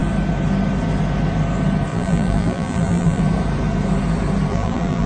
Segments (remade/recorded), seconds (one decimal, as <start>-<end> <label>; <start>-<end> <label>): 0.0-1.9 recorded; 1.9-3.2 remade; 3.2-4.5 recorded; 4.5-5.1 remade